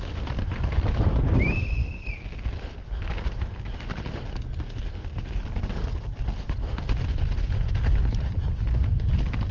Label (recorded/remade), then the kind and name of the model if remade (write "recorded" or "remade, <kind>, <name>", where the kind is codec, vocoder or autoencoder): recorded